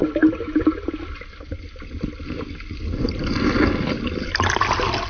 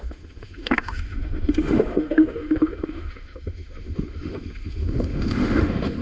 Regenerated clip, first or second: second